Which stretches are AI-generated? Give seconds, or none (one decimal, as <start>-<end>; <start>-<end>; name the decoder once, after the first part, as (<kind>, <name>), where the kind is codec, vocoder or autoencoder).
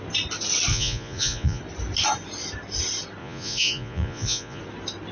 0.7-1.6 (vocoder, Vocos); 3.2-4.6